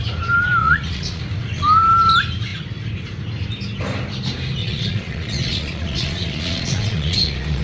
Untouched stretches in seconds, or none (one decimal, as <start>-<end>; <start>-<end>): 0.0-0.6; 1.2-4.6